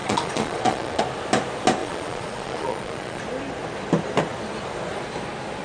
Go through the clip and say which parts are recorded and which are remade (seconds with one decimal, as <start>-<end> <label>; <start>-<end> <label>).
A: 0.0-1.0 remade; 1.0-1.8 recorded; 1.8-3.2 remade; 3.2-5.6 recorded